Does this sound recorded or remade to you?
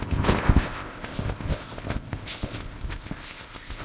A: remade